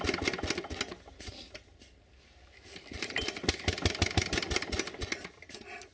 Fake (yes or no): no